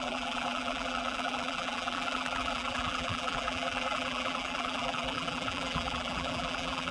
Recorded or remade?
remade